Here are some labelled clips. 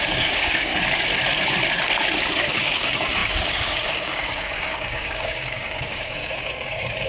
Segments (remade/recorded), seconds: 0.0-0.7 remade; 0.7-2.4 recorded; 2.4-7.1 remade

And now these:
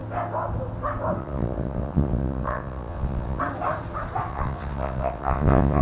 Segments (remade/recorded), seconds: 0.0-1.2 recorded; 1.2-3.4 remade; 3.4-4.3 recorded; 4.3-5.8 remade

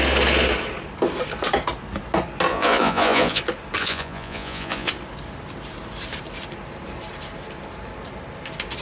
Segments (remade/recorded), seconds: 0.0-2.5 recorded; 2.5-3.4 remade; 3.4-3.8 recorded; 3.8-4.9 remade; 4.9-8.8 recorded